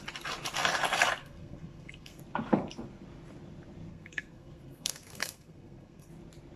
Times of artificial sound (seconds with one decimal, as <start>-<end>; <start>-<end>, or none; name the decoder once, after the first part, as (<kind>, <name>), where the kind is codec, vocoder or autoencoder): 1.2-2.2 (codec, SNAC); 3.9-6.1